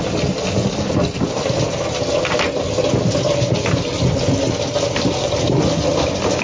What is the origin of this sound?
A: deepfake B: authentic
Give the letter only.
B